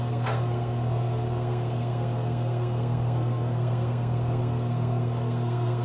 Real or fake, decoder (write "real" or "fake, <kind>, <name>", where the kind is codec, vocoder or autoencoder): fake, codec, SNAC